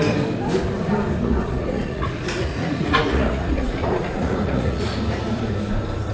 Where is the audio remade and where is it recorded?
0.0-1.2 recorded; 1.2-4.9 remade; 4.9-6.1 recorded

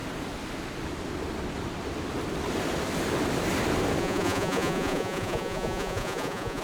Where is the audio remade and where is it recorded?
0.0-4.0 recorded; 4.0-6.6 remade